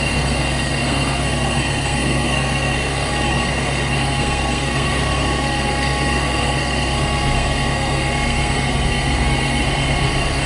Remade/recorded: remade